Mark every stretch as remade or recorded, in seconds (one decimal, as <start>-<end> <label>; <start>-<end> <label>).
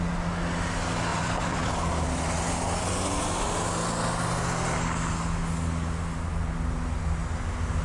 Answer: 0.0-1.1 recorded; 1.1-1.7 remade; 1.7-7.8 recorded